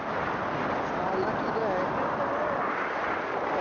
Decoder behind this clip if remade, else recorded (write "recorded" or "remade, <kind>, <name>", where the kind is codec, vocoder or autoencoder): recorded